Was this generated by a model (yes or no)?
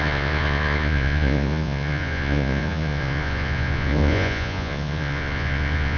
yes